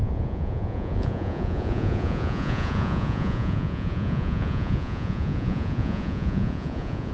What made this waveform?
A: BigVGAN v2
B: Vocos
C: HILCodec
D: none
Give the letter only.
B